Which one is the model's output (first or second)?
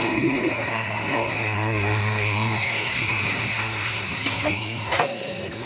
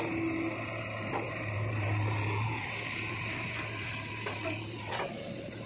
first